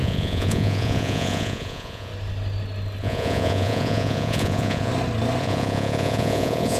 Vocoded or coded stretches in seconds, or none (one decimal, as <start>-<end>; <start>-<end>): 0.0-2.1; 3.0-4.9; 5.4-6.8